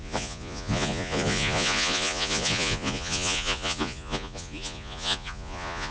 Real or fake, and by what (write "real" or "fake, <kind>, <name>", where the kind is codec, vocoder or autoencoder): fake, vocoder, Vocos